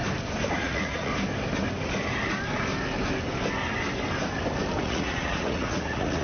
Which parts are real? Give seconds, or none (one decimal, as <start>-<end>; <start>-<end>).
0.0-0.5; 1.1-4.8